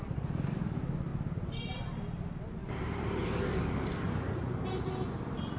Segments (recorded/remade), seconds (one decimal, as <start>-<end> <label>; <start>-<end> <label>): 0.0-2.6 recorded; 2.6-3.4 remade; 3.4-5.6 recorded